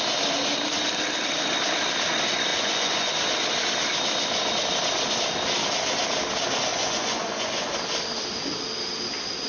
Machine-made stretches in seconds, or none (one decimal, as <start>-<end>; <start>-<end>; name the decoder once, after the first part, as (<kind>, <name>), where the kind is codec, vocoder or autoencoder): 2.5-3.1 (vocoder, Vocos); 6.7-7.7